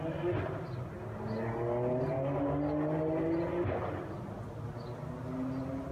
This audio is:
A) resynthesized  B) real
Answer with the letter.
B